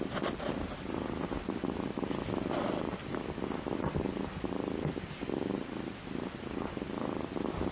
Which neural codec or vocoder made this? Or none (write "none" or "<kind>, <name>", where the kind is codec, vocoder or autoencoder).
none